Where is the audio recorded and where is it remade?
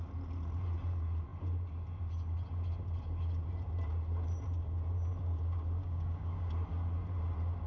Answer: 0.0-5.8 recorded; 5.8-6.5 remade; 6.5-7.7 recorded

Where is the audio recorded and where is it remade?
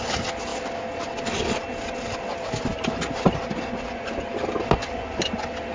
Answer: 0.0-5.7 recorded